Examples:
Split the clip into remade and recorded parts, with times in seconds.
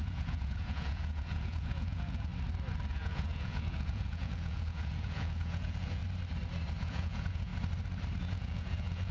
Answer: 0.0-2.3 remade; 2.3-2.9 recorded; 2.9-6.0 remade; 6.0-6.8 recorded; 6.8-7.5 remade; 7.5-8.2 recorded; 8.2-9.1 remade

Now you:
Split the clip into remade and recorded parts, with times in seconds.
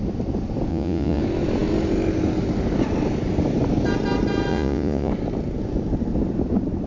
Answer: 0.0-0.7 recorded; 0.7-1.2 remade; 1.2-4.5 recorded; 4.5-5.1 remade; 5.1-6.9 recorded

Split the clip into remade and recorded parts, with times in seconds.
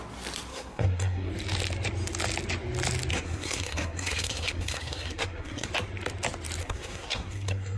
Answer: 0.0-0.5 recorded; 0.5-1.3 remade; 1.3-3.1 recorded; 3.1-5.7 remade; 5.7-6.6 recorded; 6.6-7.8 remade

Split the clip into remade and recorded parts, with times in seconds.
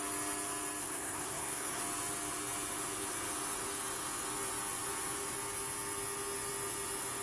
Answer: 0.0-0.8 recorded; 0.8-1.8 remade; 1.8-7.2 recorded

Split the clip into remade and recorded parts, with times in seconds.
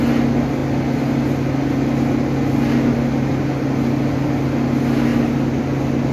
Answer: 0.0-6.1 recorded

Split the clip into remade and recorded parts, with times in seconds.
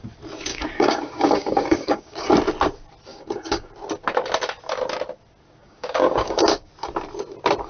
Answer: 0.0-0.5 recorded; 0.5-2.3 remade; 2.3-3.1 recorded; 3.1-3.7 remade; 3.7-5.6 recorded; 5.6-6.7 remade; 6.7-7.7 recorded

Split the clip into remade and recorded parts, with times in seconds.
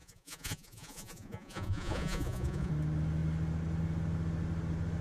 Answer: 0.0-2.7 remade; 2.7-5.0 recorded